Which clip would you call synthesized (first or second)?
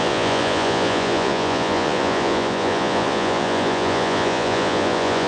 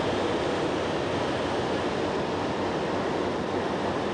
first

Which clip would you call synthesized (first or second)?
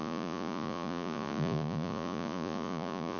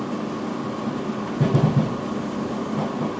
first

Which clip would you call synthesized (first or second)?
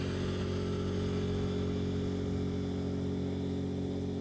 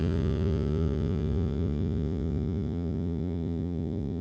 second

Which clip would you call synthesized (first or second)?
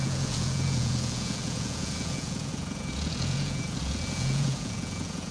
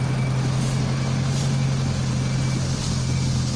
first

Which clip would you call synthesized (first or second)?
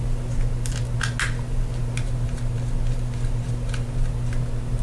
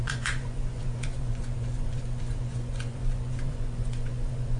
second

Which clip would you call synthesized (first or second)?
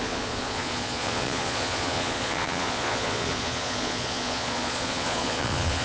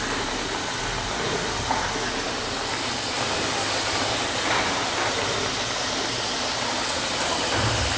first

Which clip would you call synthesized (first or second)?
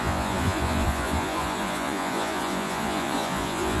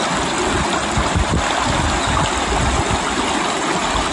first